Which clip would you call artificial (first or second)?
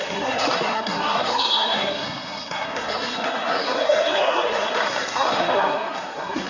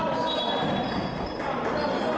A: first